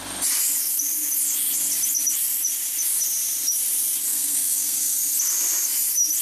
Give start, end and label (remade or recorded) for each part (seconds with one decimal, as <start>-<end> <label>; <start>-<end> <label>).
0.0-4.1 recorded; 4.1-5.0 remade; 5.0-6.2 recorded